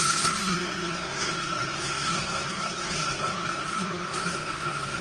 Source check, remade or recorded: remade